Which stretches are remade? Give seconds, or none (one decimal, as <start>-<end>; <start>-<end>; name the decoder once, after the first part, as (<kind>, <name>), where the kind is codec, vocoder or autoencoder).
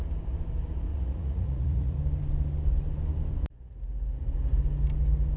0.9-2.0 (vocoder, Vocos)